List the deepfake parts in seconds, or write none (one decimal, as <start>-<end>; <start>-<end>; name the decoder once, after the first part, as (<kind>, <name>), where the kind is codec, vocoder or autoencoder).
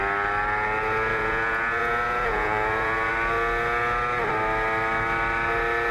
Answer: 1.1-3.1 (vocoder, Vocos)